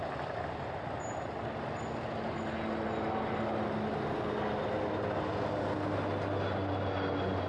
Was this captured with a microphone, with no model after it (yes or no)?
yes